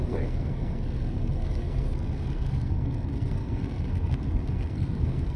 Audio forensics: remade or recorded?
remade